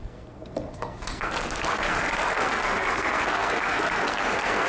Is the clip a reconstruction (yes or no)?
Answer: yes